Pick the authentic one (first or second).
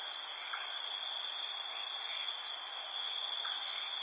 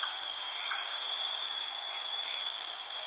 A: first